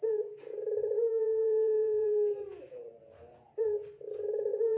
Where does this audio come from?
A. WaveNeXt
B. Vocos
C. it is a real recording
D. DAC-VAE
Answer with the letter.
B